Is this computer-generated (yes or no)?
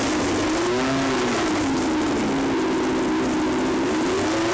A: no